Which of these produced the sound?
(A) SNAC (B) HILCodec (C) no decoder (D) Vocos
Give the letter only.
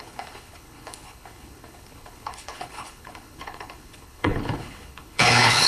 B